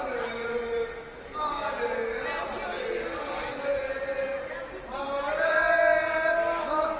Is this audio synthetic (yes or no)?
no